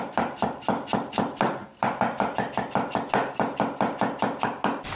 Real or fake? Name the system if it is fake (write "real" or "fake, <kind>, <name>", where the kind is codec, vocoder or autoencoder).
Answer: real